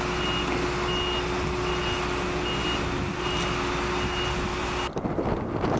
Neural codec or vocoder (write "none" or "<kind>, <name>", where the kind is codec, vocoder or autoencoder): none